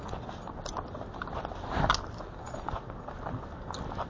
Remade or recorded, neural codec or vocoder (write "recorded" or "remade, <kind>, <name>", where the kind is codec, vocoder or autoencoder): recorded